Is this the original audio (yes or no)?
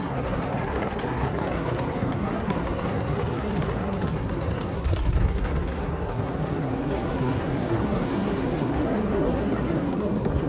no